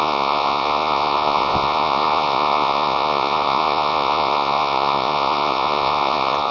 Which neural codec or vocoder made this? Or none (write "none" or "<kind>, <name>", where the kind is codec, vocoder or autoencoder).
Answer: vocoder, Vocos